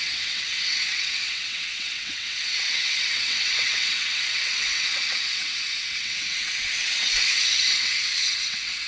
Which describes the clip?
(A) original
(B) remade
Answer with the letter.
B